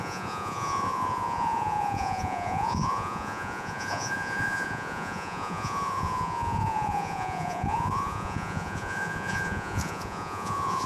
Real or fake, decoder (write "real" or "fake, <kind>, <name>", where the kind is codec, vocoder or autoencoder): fake, vocoder, Vocos